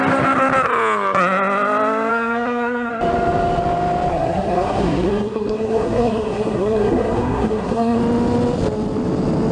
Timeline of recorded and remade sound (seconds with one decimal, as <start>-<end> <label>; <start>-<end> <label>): 0.0-2.1 recorded; 2.1-2.9 remade; 2.9-4.1 recorded; 4.1-8.0 remade; 8.0-9.5 recorded